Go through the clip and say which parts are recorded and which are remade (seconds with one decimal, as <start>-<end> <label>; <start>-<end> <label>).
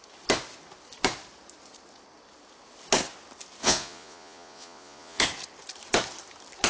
0.0-3.6 recorded; 3.6-5.2 remade; 5.2-6.7 recorded